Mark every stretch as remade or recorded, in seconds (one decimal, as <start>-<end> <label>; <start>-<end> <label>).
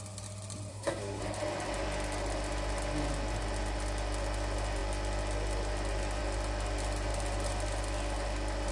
0.0-0.7 recorded; 0.7-1.2 remade; 1.2-8.7 recorded